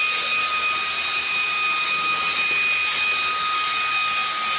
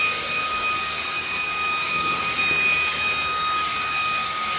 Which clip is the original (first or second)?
first